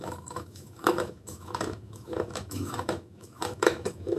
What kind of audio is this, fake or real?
fake